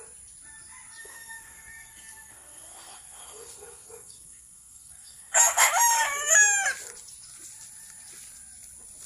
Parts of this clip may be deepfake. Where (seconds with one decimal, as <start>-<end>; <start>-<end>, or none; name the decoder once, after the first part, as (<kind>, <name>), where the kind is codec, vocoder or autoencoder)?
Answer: 1.0-5.7 (codec, SNAC)